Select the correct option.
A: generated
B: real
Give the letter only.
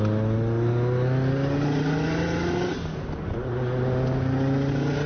B